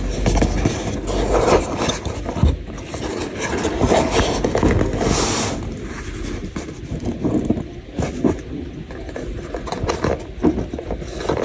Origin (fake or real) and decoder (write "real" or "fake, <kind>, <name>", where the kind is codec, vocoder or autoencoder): real